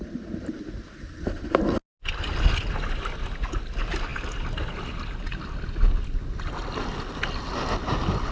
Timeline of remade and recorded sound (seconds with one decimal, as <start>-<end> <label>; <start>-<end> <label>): 0.0-8.3 recorded